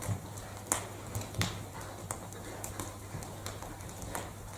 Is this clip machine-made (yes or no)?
no